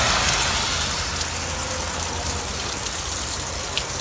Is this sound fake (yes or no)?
no